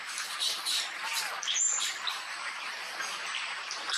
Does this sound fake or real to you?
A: fake